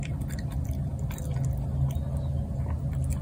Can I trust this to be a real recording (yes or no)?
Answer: yes